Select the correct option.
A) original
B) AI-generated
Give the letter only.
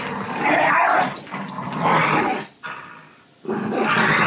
A